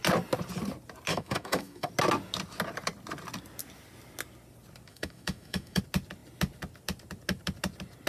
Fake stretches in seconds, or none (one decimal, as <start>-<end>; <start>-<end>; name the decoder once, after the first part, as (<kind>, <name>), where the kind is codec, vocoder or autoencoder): 1.1-1.9 (autoencoder, DAC-VAE); 4.9-5.8